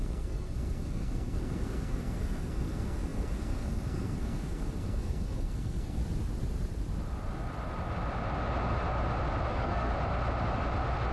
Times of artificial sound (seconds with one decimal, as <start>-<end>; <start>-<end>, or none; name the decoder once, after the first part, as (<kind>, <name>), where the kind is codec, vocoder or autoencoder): 0.0-6.0 (codec, SNAC); 9.5-9.9